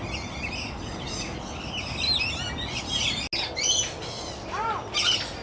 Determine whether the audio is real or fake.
real